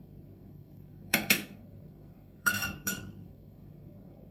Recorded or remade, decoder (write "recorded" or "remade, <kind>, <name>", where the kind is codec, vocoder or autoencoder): remade, codec, SNAC